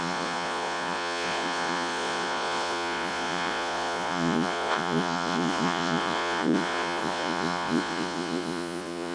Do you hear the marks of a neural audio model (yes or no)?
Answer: yes